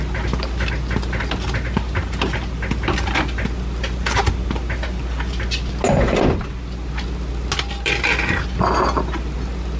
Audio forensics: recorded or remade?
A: recorded